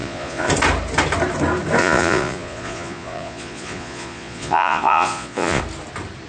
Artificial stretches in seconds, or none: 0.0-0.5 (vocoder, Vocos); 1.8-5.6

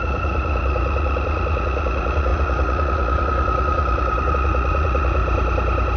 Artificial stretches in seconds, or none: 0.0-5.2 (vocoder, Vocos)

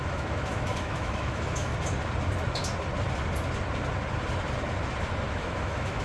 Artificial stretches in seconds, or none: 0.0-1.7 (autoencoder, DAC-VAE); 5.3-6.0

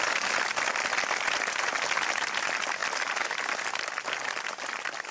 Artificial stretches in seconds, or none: none

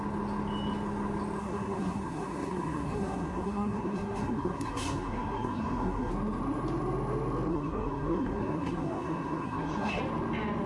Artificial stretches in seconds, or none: 1.4-6.1 (codec, SNAC); 7.5-10.0

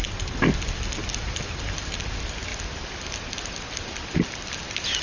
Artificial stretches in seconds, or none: none